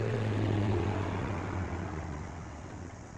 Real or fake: fake